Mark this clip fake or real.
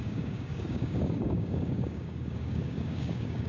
fake